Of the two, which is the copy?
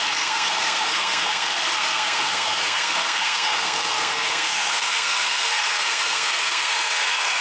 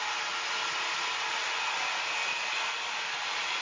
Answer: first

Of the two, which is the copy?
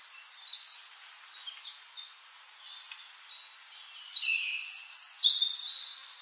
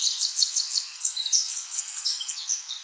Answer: second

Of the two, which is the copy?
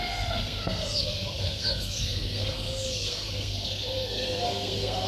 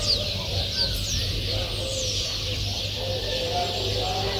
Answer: first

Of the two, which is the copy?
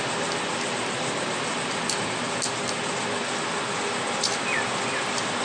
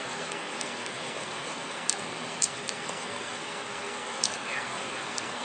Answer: second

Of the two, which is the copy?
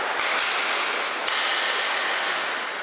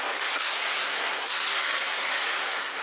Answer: second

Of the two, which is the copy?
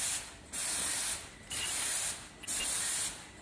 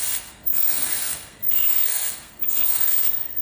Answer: second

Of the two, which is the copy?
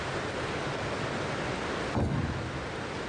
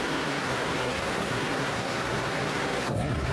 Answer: second